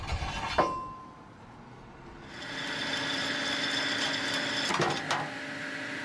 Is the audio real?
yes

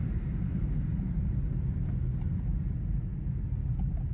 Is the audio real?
yes